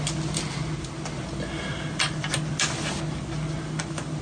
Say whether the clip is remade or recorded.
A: recorded